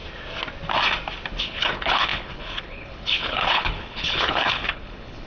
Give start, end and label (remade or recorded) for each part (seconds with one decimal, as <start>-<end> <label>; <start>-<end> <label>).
0.0-1.4 recorded; 1.4-5.3 remade